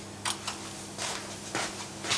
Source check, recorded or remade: recorded